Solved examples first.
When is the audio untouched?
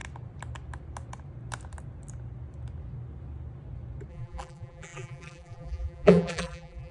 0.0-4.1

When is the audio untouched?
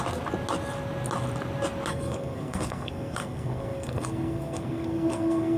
0.0-1.9